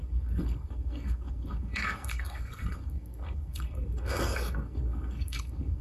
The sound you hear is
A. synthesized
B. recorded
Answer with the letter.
A